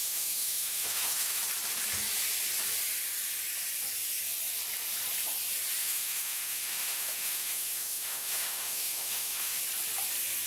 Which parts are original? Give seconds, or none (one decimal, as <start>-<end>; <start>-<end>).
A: 1.4-5.8; 9.6-10.5